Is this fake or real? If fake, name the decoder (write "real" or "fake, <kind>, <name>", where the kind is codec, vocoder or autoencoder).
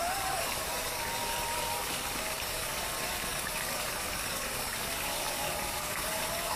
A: fake, codec, DAC